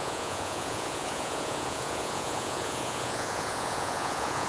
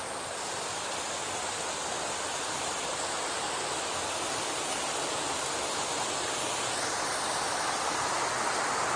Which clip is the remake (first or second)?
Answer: first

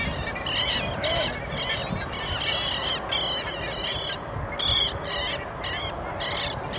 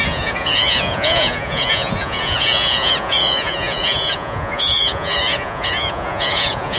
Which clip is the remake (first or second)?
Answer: second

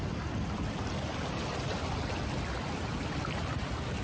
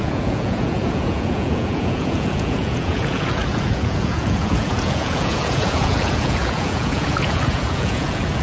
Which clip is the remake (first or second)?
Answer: second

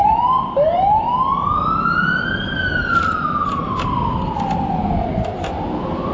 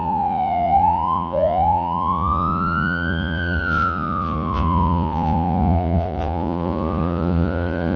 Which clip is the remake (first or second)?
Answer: second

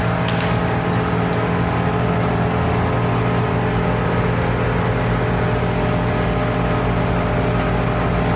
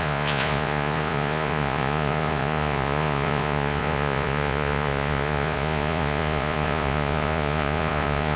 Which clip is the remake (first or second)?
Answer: second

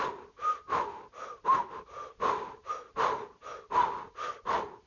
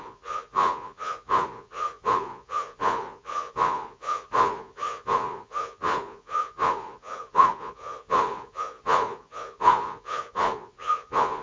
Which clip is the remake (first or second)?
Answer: second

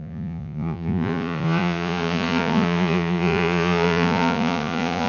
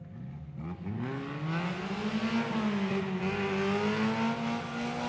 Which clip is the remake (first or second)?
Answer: first